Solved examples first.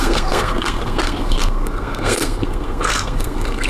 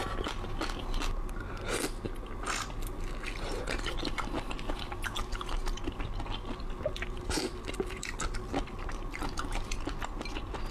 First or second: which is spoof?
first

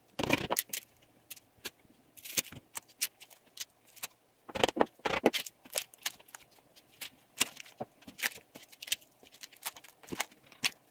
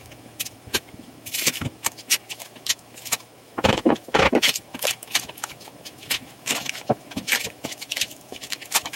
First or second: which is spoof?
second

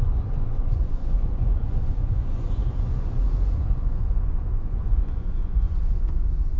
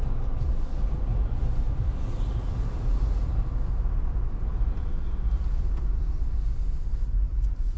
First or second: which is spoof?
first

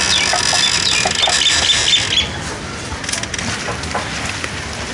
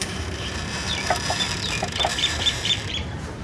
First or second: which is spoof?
second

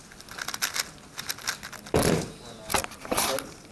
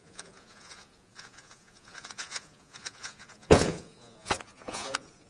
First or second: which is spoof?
second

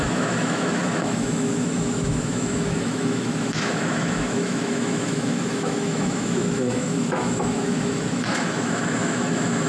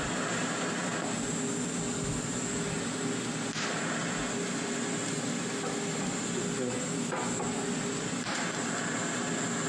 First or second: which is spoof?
first